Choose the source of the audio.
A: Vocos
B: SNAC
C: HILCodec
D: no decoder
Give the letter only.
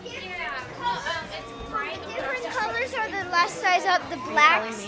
D